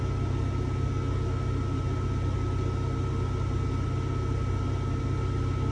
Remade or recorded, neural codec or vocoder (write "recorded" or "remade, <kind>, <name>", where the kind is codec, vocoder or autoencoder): recorded